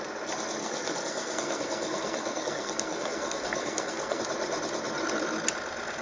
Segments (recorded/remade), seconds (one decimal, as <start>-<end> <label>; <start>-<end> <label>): 0.0-0.6 recorded; 0.6-4.2 remade; 4.2-6.0 recorded